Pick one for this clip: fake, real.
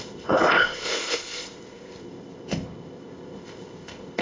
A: fake